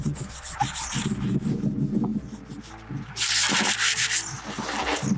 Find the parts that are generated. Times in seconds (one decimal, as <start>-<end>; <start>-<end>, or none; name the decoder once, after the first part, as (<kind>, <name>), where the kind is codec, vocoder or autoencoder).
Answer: 0.0-0.6 (vocoder, Vocos)